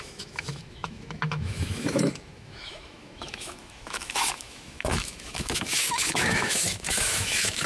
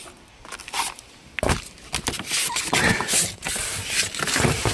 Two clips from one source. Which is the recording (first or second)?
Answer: second